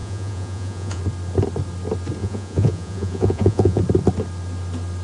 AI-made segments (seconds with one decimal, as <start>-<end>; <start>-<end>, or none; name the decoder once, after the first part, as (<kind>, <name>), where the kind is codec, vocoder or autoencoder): 0.0-1.0 (vocoder, Vocos); 2.2-3.8